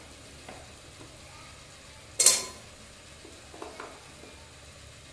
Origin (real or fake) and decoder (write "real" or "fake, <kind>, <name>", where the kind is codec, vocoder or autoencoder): real